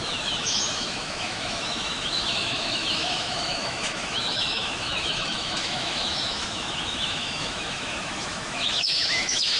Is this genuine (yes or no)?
no